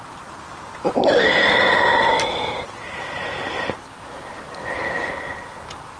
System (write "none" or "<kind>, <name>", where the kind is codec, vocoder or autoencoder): none